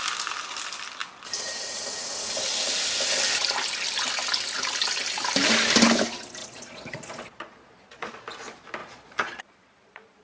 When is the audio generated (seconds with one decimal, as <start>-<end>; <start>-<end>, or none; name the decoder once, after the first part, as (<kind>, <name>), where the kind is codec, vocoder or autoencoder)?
6.4-8.2 (vocoder, Vocos); 8.8-10.2